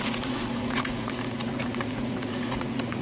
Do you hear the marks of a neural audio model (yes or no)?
yes